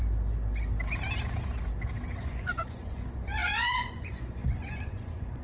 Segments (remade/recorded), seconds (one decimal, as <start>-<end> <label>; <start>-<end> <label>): 0.0-2.2 recorded; 2.2-5.4 remade